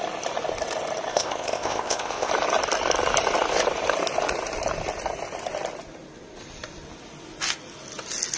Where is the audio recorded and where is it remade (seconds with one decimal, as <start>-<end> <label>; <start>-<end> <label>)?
0.0-1.1 recorded; 1.1-2.3 remade; 2.3-8.4 recorded